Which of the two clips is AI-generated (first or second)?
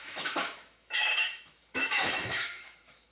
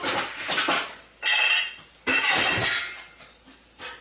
first